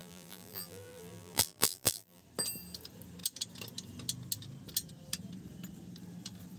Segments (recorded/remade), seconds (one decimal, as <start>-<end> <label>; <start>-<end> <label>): 0.0-2.2 remade; 2.2-6.6 recorded